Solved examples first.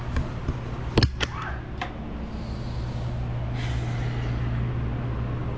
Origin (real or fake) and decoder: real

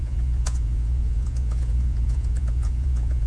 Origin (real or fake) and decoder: fake, vocoder, Vocos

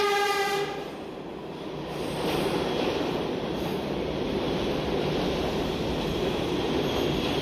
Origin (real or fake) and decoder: real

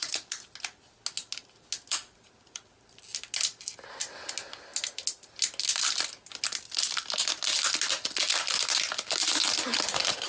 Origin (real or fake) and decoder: real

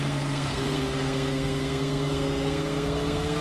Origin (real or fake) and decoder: fake, codec, SNAC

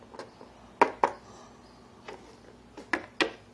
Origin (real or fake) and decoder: real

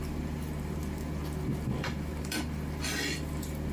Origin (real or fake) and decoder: fake, vocoder, BigVGAN v2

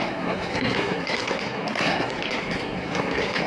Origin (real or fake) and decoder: fake, codec, SNAC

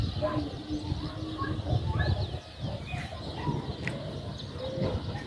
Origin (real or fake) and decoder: real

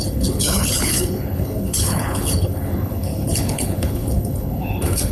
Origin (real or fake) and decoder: fake, codec, HILCodec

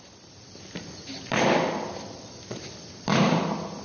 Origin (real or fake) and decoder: real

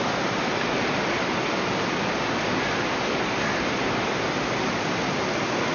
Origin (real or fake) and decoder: real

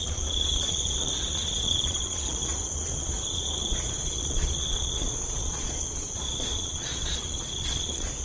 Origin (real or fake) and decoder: fake, vocoder, Vocos